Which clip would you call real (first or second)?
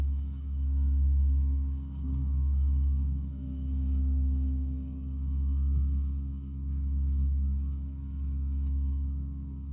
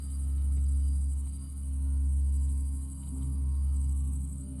second